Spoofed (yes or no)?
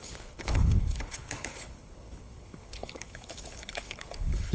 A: yes